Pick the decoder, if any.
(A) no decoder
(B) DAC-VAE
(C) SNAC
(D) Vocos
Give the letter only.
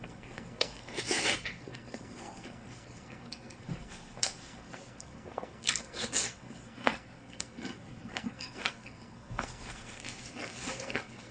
C